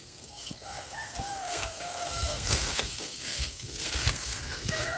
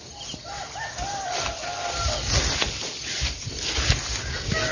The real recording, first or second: second